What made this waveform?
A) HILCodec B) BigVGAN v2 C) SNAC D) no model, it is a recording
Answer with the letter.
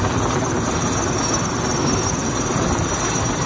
D